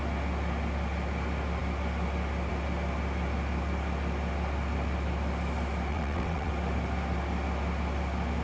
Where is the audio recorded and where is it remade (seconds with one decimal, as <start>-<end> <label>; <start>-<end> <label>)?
0.0-5.9 recorded; 5.9-6.5 remade; 6.5-8.4 recorded